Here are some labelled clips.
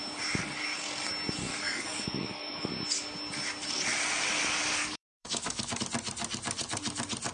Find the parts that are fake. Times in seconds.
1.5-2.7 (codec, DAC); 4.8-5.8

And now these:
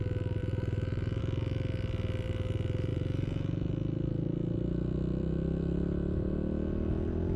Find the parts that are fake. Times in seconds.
0.4-1.2 (vocoder, BigVGAN v2); 2.9-3.7

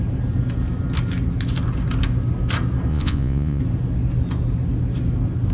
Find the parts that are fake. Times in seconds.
2.9-3.6 (vocoder, Vocos)